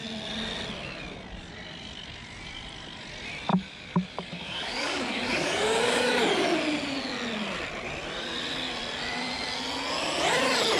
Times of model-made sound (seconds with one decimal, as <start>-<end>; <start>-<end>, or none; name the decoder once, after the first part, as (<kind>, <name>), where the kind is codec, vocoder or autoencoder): 3.5-6.1 (codec, DAC)